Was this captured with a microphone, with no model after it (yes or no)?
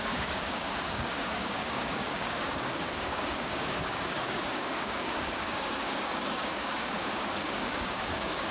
no